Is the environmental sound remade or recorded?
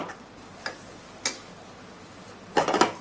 recorded